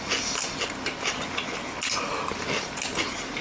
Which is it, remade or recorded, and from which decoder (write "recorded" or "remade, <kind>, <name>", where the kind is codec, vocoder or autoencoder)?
recorded